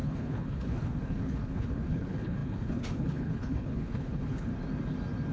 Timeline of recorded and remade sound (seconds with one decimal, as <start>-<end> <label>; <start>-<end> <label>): 0.0-4.5 remade; 4.5-5.3 recorded